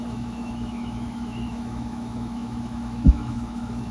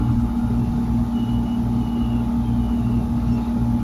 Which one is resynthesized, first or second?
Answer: first